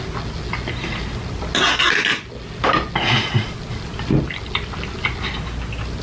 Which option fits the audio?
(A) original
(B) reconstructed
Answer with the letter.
A